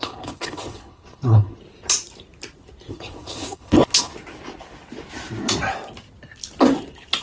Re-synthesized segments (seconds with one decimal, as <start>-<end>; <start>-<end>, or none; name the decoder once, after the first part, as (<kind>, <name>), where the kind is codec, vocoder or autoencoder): 0.0-1.6 (codec, HILCodec); 2.9-4.1